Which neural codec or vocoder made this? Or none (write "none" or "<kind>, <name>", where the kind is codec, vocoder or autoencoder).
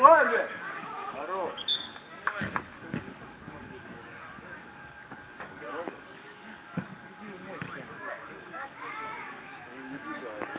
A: codec, DAC